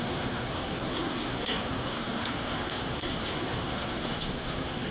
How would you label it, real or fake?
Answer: fake